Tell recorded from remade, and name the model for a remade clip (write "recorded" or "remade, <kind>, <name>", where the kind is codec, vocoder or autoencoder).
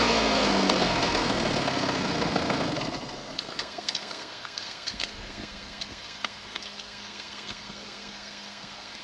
remade, codec, SNAC